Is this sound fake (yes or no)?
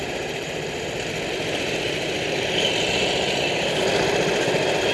no